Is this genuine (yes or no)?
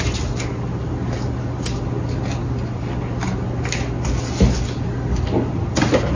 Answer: yes